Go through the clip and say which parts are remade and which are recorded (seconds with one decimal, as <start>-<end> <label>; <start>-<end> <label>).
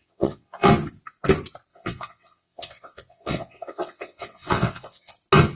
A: 0.0-0.7 remade; 0.7-1.7 recorded; 1.7-5.1 remade; 5.1-5.6 recorded